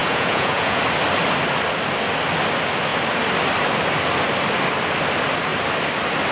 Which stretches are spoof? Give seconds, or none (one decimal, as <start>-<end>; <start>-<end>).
0.0-0.8